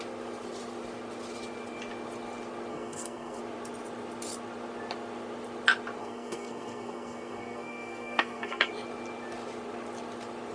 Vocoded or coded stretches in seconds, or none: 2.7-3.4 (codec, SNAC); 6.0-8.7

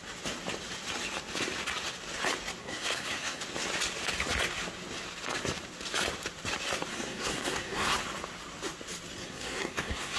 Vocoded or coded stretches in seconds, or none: 2.6-3.4 (codec, SNAC); 6.9-7.9; 9.2-10.2

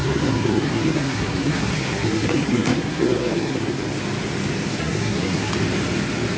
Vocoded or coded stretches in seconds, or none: 0.0-3.8 (codec, SNAC); 4.7-5.5

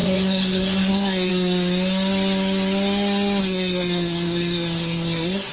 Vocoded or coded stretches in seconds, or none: 0.0-1.3 (codec, SNAC); 3.4-5.5

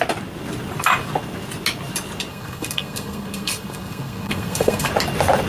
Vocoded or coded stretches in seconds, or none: 2.3-4.9 (codec, SNAC)

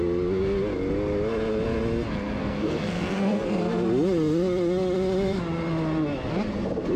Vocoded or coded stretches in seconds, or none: 2.4-3.6 (codec, SNAC)

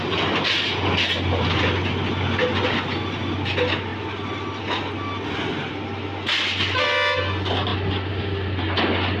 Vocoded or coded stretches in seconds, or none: none

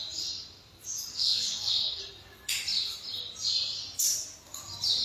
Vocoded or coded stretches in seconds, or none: 1.1-2.0 (codec, SNAC)